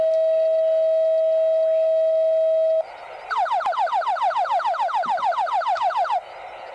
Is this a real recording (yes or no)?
yes